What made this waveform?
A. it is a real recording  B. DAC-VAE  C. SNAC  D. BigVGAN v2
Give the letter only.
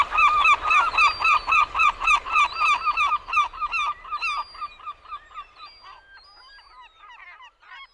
A